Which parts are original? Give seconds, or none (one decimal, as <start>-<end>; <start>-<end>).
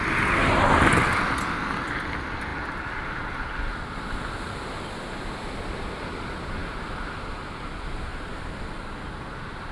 0.0-9.7